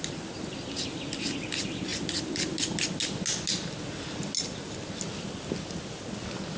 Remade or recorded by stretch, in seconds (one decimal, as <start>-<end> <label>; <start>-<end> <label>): 0.0-6.6 recorded